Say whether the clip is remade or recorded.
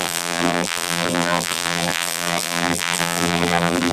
remade